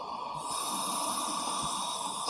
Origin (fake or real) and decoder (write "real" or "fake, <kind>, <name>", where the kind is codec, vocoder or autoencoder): real